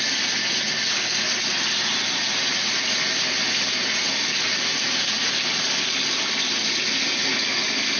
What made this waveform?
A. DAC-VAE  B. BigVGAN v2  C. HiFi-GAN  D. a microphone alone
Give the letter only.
D